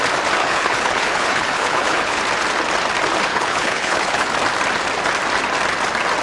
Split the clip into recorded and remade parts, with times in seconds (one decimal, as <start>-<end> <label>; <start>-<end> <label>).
0.0-0.4 recorded; 0.4-2.2 remade; 2.2-3.3 recorded; 3.3-4.3 remade; 4.3-6.2 recorded